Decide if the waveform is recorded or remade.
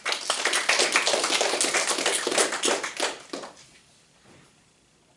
recorded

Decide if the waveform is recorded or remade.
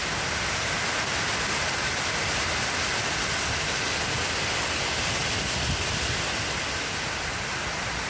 recorded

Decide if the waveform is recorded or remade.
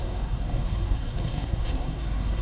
remade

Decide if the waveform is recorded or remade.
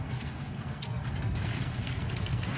remade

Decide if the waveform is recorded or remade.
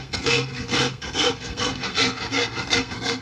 remade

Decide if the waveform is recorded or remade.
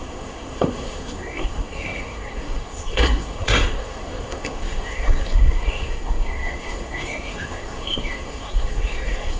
remade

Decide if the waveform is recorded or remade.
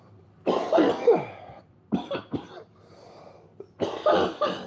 recorded